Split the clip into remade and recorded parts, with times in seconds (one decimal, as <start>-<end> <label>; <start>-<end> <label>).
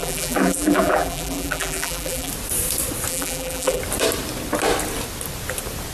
0.0-2.3 remade; 2.3-3.1 recorded; 3.1-3.8 remade; 3.8-5.9 recorded